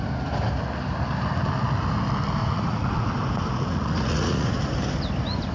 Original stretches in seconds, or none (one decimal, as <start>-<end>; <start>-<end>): 0.0-2.4; 3.1-3.7; 4.6-5.5